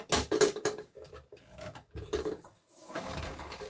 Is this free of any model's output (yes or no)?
no